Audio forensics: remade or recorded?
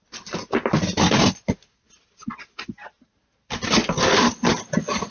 recorded